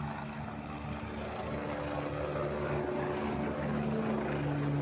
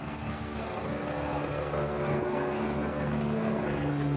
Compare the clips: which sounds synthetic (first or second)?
second